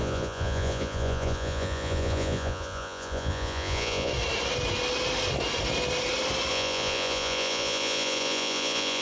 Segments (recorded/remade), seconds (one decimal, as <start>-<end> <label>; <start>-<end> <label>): 0.0-4.1 remade; 4.1-6.5 recorded; 6.5-9.0 remade